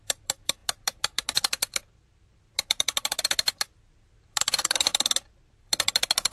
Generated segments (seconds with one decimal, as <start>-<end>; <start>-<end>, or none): 0.0-4.9; 5.6-6.3

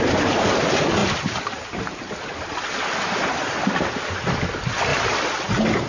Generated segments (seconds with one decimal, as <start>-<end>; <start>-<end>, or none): 1.0-4.5; 4.9-5.5